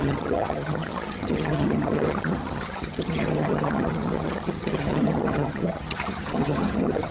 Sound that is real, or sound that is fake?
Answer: fake